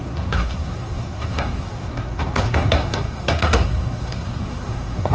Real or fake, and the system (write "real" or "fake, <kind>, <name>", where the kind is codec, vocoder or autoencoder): fake, codec, SNAC